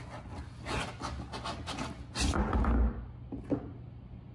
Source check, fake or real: real